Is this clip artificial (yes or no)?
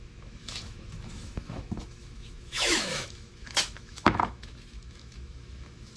yes